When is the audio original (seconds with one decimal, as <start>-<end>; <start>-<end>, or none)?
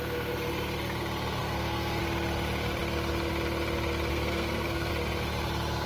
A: 0.0-1.4; 2.0-4.1; 4.9-5.9